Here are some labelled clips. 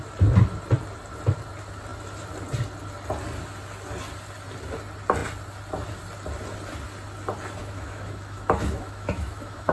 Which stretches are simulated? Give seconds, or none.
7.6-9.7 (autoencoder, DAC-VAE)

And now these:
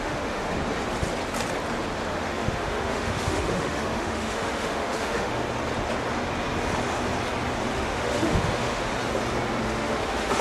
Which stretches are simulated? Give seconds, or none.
0.0-0.5 (autoencoder, DAC-VAE); 2.1-5.4; 7.7-8.9; 9.6-10.4